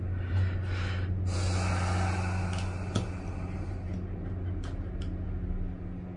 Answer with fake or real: real